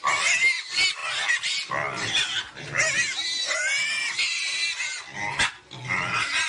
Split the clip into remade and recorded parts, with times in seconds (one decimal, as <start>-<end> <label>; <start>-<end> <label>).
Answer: 0.0-6.5 recorded